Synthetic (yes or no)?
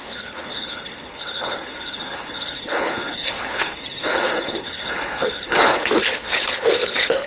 yes